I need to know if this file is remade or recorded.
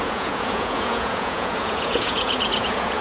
remade